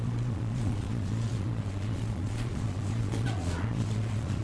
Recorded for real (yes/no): no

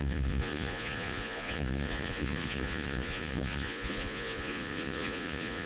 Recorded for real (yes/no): no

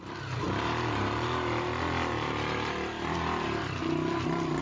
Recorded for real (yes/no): yes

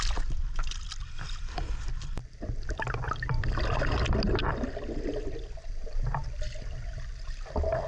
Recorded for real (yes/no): yes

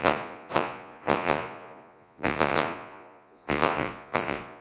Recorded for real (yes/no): no